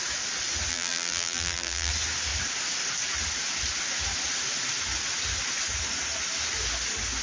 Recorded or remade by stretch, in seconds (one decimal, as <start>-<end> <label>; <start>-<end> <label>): 0.0-0.7 recorded; 0.7-1.9 remade; 1.9-7.2 recorded